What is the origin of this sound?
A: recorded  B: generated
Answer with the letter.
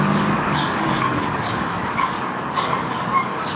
B